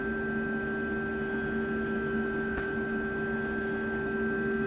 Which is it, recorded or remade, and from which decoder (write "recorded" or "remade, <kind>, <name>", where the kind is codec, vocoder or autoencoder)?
recorded